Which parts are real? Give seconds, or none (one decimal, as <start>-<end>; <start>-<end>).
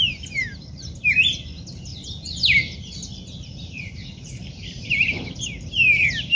0.0-0.4; 1.3-1.9; 5.4-6.4